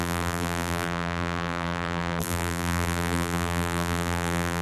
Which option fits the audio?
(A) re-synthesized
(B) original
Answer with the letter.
A